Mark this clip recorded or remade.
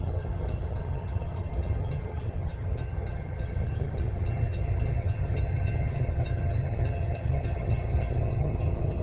remade